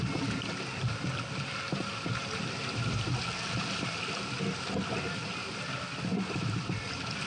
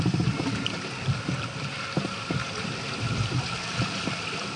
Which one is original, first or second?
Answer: first